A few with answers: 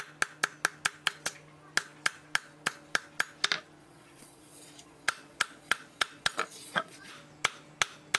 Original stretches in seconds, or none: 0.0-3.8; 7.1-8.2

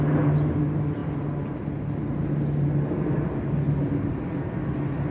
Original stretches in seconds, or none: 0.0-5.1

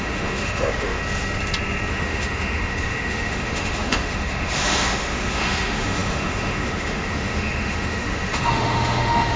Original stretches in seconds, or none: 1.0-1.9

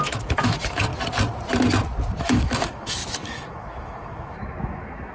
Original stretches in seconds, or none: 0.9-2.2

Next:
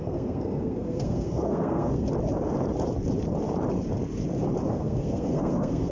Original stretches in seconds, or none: 2.1-4.7

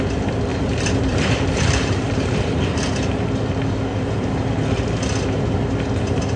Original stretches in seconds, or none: 0.0-0.5; 3.2-3.9; 4.5-6.4

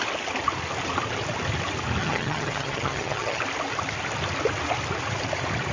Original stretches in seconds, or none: 0.0-2.0; 3.4-5.7